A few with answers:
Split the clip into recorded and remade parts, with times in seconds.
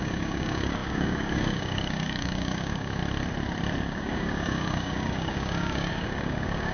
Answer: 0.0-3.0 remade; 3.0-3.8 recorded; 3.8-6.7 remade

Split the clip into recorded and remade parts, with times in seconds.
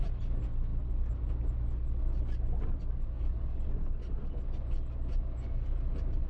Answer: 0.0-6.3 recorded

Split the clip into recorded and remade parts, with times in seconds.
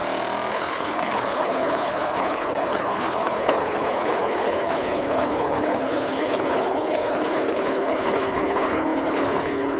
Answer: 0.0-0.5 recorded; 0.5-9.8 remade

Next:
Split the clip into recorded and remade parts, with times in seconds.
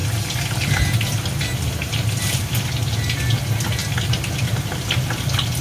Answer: 0.0-5.6 recorded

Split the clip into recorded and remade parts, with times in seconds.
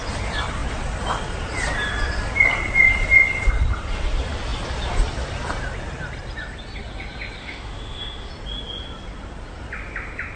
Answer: 0.0-7.4 recorded; 7.4-8.3 remade; 8.3-10.4 recorded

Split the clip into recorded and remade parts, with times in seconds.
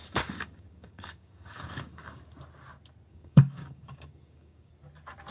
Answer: 0.0-2.2 remade; 2.2-3.1 recorded; 3.1-4.7 remade; 4.7-5.3 recorded